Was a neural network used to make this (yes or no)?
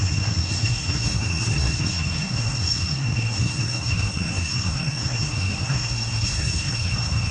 yes